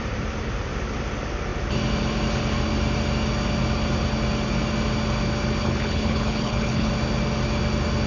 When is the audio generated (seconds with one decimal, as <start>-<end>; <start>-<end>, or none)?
5.6-6.9